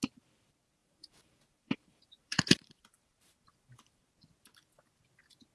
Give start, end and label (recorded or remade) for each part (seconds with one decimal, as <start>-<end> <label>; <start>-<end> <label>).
0.0-0.8 recorded; 0.8-4.1 remade; 4.1-5.5 recorded